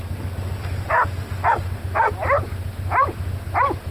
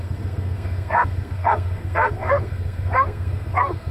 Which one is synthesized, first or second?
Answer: second